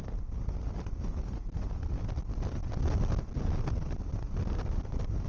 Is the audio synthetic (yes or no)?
no